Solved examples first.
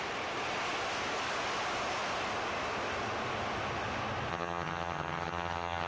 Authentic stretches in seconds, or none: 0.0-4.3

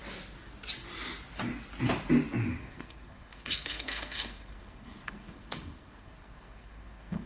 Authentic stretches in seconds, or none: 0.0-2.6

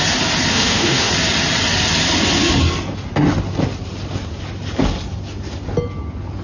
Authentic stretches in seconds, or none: 0.0-0.5; 1.1-6.4